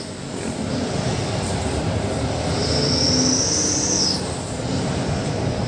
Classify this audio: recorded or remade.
recorded